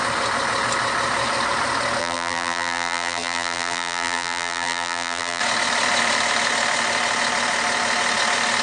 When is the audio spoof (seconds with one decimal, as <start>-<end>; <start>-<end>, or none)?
2.0-5.4